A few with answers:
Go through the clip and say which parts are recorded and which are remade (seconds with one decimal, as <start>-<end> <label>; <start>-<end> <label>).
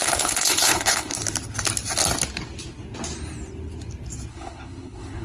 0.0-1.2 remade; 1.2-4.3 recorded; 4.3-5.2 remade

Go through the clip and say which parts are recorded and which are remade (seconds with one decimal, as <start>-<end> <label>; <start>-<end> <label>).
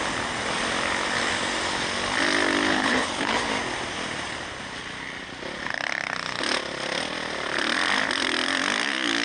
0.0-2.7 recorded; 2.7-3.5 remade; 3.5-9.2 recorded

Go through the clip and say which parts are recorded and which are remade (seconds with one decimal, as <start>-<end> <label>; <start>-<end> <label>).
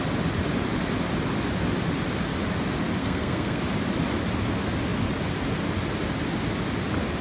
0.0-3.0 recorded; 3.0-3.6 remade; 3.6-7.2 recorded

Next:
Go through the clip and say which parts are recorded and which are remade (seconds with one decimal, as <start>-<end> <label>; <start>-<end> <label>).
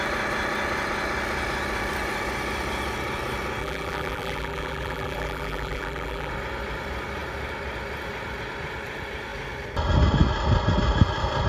0.0-3.6 recorded; 3.6-6.3 remade; 6.3-11.5 recorded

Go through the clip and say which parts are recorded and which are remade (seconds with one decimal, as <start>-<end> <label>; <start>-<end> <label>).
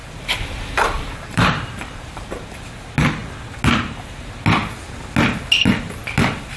0.0-2.6 remade; 2.6-6.6 recorded